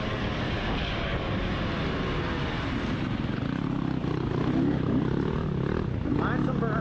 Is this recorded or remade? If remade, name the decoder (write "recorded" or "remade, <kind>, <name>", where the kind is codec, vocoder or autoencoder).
recorded